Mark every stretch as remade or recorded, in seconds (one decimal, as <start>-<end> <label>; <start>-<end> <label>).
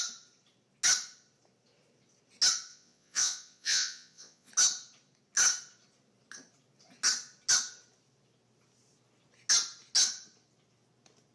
0.0-2.7 recorded; 2.7-4.5 remade; 4.5-11.3 recorded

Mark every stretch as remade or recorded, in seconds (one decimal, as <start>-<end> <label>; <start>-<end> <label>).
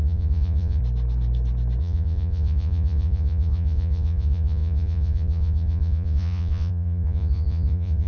0.0-0.8 remade; 0.8-1.8 recorded; 1.8-8.1 remade